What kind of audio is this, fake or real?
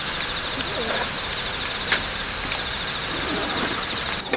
real